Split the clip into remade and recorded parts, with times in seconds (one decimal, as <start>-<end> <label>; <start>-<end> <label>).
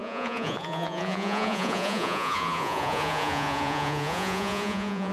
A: 0.0-5.1 remade